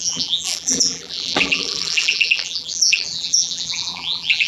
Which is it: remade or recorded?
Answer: remade